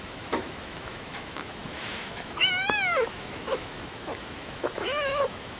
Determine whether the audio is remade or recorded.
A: remade